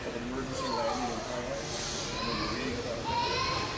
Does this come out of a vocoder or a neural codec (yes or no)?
no